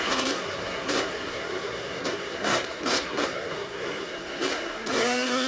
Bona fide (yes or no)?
no